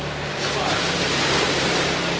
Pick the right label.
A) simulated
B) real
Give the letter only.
B